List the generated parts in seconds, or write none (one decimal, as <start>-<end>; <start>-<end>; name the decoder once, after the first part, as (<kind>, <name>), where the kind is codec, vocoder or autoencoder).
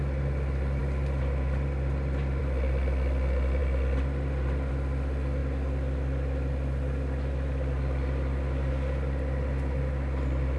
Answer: none